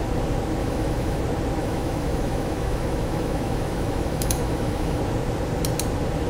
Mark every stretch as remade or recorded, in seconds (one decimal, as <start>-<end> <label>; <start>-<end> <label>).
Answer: 0.0-0.6 recorded; 0.6-1.2 remade; 1.2-1.6 recorded; 1.6-5.0 remade; 5.0-6.3 recorded